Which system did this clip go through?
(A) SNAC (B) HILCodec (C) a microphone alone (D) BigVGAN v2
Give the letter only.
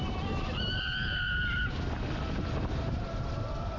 C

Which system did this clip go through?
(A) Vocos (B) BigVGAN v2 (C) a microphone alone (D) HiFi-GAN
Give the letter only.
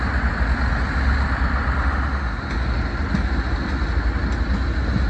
C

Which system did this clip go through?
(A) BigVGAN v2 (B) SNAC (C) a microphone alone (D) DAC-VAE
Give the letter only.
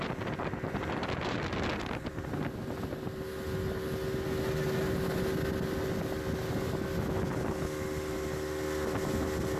C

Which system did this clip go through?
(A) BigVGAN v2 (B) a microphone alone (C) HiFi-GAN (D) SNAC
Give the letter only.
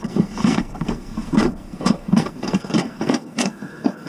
D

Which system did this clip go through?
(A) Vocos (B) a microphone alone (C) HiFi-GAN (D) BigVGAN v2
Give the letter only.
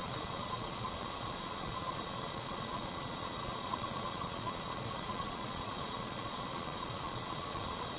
A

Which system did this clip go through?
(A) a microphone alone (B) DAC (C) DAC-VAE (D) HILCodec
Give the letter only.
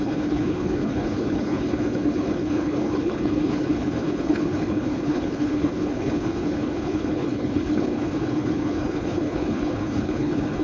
D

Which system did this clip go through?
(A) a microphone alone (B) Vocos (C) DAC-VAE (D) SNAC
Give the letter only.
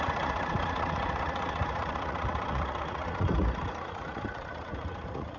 B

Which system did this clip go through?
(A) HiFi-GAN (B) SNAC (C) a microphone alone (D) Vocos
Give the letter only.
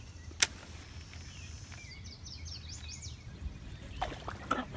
C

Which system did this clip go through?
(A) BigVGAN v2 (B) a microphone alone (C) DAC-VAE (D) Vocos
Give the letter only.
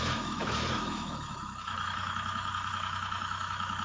C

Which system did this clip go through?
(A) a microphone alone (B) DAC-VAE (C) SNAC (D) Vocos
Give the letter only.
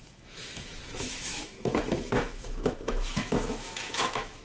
B